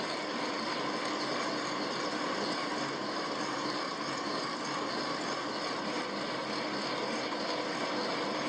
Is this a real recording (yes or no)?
yes